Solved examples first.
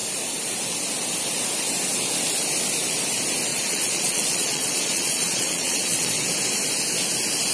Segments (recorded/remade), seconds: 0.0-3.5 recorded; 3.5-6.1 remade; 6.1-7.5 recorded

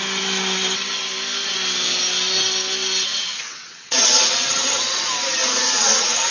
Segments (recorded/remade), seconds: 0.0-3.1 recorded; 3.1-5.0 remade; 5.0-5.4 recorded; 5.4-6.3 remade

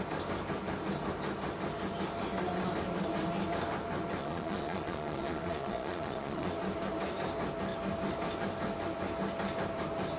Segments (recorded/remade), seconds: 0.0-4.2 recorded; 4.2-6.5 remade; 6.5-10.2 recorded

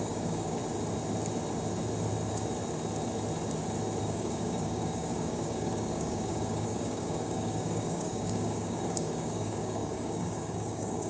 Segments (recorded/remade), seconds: 0.0-0.6 remade; 0.6-4.0 recorded; 4.0-11.1 remade

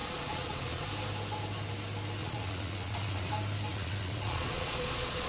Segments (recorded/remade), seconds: 0.0-0.8 remade; 0.8-2.2 recorded; 2.2-3.3 remade; 3.3-3.7 recorded; 3.7-5.3 remade